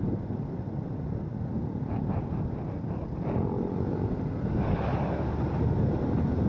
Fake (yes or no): no